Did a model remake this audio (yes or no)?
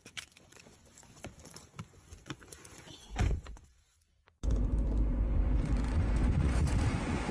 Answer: yes